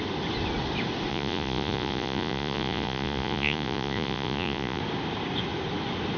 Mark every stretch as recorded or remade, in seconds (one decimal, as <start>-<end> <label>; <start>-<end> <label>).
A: 0.0-1.1 recorded; 1.1-4.8 remade; 4.8-6.2 recorded